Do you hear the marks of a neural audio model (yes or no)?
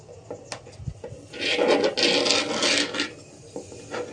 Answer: no